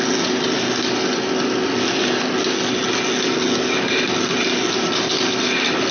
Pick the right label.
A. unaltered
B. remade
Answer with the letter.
A